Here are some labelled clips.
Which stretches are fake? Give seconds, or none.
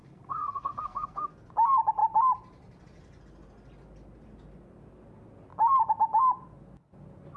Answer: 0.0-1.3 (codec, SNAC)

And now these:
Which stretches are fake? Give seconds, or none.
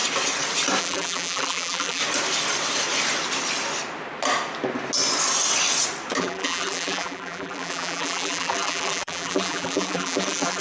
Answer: 0.8-2.0 (vocoder, BigVGAN v2); 6.2-10.6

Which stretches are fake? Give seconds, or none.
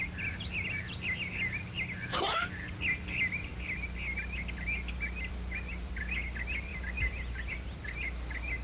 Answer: none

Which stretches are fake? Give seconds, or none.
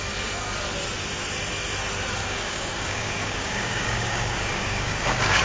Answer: 2.2-5.4 (codec, DAC)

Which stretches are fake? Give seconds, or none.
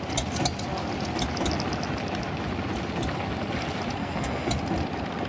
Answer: 4.0-4.5 (codec, SNAC)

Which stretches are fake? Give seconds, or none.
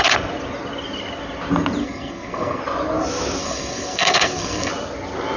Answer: 1.8-2.6 (codec, SNAC); 3.4-4.7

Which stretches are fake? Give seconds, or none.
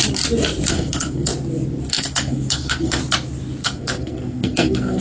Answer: 0.7-1.3 (codec, SNAC); 1.9-3.0; 3.6-5.0